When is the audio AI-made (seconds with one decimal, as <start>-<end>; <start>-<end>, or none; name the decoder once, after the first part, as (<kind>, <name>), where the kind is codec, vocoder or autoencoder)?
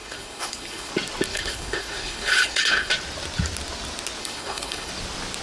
0.0-0.9 (codec, HILCodec); 1.3-2.9; 4.2-4.9